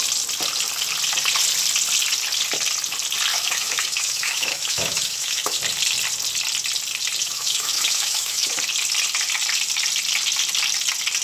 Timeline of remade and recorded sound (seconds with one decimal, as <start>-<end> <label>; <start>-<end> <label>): 0.0-3.3 recorded; 3.3-5.6 remade; 5.6-7.2 recorded; 7.2-8.6 remade; 8.6-11.2 recorded